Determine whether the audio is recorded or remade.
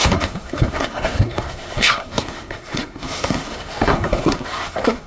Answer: remade